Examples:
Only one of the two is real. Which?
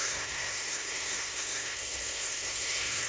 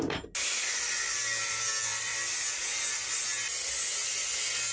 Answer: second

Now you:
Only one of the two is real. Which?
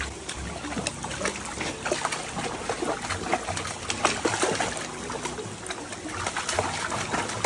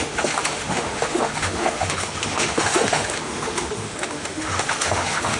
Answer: first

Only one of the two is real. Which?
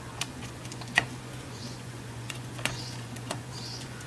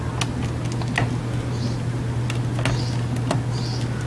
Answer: second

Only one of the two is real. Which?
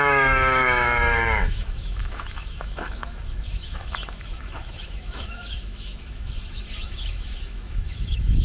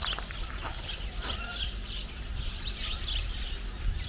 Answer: second